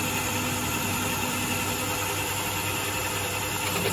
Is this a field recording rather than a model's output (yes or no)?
yes